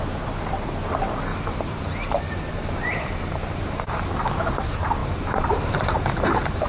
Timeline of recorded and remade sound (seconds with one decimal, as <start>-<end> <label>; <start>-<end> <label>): 0.0-1.3 recorded; 1.3-4.1 remade; 4.1-5.0 recorded; 5.0-6.7 remade